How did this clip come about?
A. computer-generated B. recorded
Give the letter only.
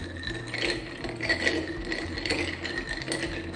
B